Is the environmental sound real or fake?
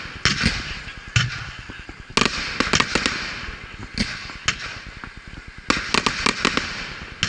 real